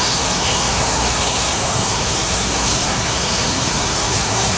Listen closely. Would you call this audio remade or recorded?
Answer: remade